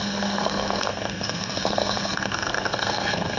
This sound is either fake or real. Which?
fake